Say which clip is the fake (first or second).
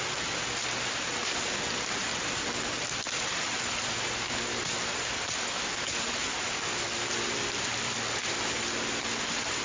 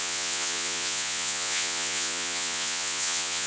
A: second